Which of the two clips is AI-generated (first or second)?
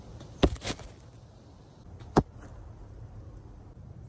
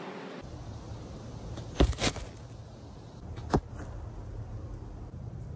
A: first